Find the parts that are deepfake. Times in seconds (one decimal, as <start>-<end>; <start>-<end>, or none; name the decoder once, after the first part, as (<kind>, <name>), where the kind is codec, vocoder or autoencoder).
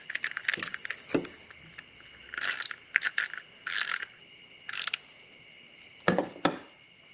none